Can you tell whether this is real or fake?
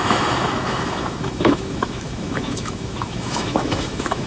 fake